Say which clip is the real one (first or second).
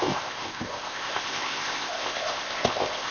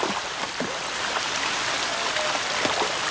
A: second